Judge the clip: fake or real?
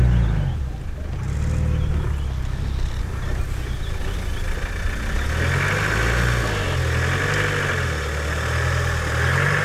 real